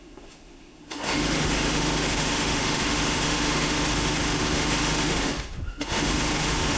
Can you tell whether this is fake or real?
fake